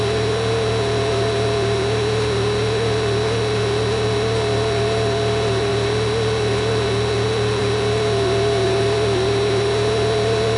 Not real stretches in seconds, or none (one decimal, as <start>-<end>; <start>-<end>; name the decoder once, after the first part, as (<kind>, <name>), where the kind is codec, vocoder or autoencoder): none